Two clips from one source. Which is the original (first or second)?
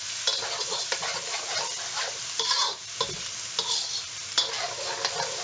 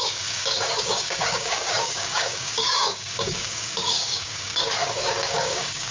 first